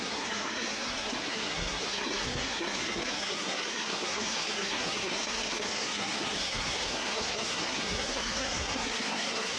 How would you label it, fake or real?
fake